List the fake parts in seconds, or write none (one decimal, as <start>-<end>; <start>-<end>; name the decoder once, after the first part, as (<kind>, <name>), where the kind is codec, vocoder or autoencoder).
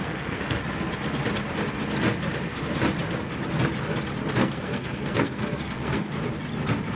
0.0-0.6 (codec, SNAC); 4.4-6.1